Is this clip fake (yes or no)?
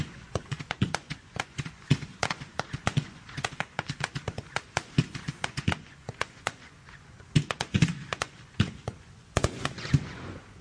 yes